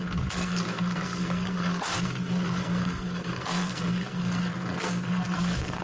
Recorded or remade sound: remade